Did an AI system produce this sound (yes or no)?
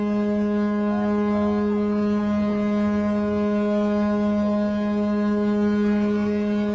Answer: no